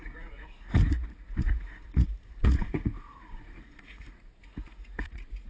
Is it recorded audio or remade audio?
remade